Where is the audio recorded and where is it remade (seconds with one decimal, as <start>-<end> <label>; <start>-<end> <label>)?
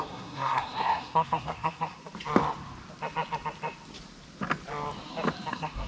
0.0-2.0 remade; 2.0-5.5 recorded; 5.5-5.9 remade